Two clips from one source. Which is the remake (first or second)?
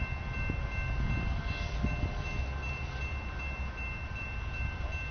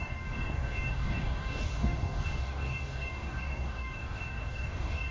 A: second